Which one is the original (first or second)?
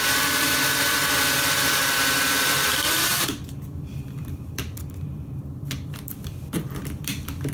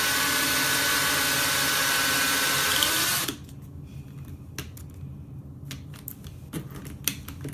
second